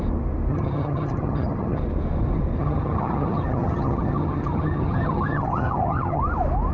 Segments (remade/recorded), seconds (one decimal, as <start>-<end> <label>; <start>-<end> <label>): 0.0-0.5 recorded; 0.5-1.8 remade; 1.8-2.6 recorded; 2.6-6.2 remade; 6.2-6.7 recorded